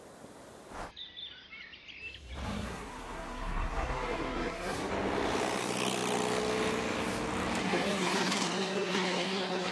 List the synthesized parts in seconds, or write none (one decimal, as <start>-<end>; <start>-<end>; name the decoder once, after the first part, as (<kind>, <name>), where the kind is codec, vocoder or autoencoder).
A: 2.4-4.9 (codec, SNAC); 7.6-9.7